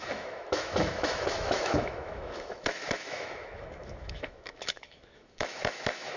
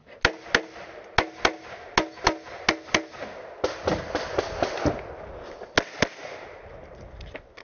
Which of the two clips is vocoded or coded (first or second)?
first